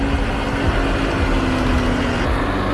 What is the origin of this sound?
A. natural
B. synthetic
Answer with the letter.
A